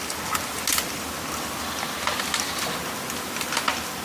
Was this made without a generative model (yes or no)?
yes